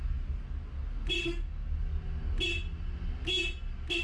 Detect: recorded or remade recorded